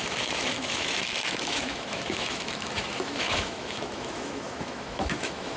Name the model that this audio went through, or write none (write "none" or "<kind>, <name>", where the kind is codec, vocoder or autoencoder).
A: autoencoder, DAC-VAE